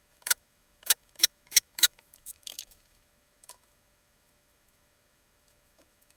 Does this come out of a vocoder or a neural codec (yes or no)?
yes